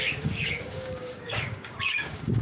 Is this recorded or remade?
remade